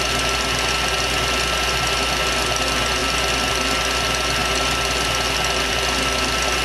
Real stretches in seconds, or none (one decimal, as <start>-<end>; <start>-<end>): 0.0-6.6